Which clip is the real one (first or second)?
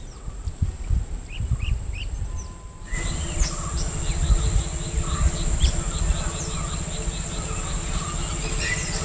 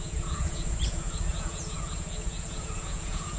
first